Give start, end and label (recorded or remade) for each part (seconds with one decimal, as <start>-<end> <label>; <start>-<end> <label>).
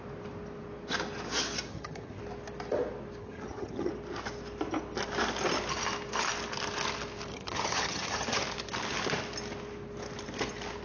0.0-1.7 recorded; 1.7-2.2 remade; 2.2-3.2 recorded; 3.2-3.9 remade; 3.9-7.3 recorded; 7.3-8.4 remade; 8.4-10.8 recorded